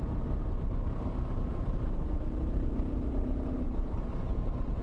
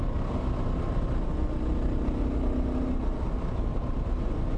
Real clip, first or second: second